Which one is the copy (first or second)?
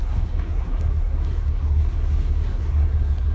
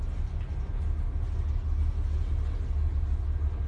first